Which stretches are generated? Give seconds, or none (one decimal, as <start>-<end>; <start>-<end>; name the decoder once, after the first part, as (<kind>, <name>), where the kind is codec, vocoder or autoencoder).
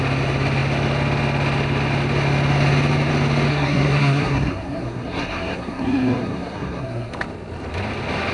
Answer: 3.5-7.1 (codec, SNAC)